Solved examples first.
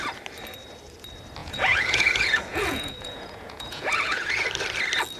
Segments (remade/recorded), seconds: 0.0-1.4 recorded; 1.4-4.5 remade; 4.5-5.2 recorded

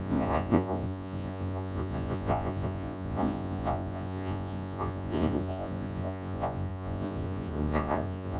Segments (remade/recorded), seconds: 0.0-8.4 remade